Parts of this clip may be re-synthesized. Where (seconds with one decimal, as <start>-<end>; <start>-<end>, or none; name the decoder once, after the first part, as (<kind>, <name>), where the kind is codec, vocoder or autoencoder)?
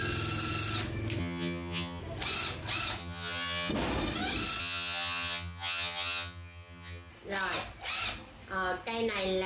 1.2-2.0 (vocoder, HiFi-GAN); 3.0-3.7; 4.6-7.1